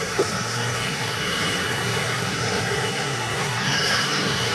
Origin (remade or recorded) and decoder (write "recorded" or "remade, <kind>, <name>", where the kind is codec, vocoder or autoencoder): remade, codec, SNAC